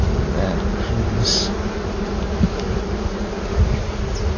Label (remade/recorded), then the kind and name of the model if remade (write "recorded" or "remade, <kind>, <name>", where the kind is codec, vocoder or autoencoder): recorded